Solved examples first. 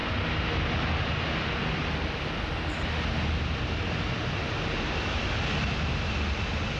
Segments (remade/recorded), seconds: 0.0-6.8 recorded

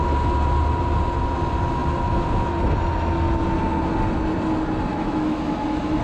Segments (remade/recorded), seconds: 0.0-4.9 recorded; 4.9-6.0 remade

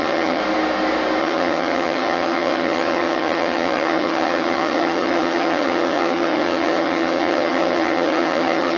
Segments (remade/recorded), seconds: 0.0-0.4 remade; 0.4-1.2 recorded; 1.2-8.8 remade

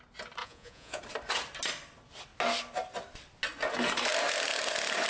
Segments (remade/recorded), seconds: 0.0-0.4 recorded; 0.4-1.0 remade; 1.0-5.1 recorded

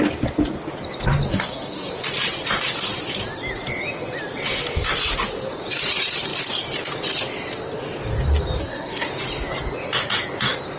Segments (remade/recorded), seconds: 0.0-1.3 recorded; 1.3-1.9 remade; 1.9-8.6 recorded; 8.6-9.1 remade; 9.1-10.8 recorded

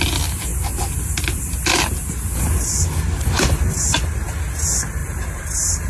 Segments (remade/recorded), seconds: 0.0-5.0 recorded; 5.0-5.9 remade